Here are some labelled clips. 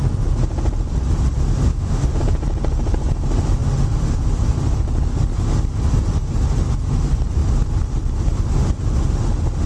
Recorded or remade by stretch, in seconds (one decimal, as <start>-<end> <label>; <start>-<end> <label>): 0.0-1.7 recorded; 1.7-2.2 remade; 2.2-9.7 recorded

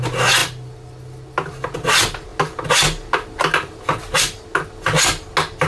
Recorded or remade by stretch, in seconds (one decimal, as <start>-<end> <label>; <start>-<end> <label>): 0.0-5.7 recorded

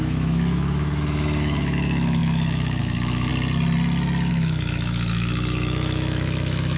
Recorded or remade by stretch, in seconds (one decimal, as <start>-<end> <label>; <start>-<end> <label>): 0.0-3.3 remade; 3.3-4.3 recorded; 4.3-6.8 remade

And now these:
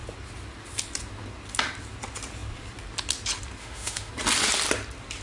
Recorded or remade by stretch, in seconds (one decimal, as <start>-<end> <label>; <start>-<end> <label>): 0.0-3.6 recorded; 3.6-4.1 remade; 4.1-5.2 recorded

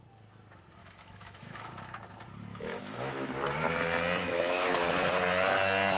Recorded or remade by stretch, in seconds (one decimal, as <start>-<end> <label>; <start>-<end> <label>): 0.0-0.8 recorded; 0.8-1.7 remade; 1.7-2.5 recorded; 2.5-3.3 remade; 3.3-4.2 recorded; 4.2-4.9 remade; 4.9-6.0 recorded

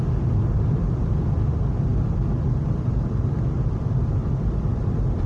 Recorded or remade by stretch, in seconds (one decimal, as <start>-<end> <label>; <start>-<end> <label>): 0.0-5.3 recorded